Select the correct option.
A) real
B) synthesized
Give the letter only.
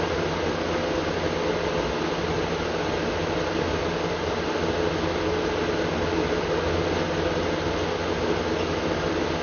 A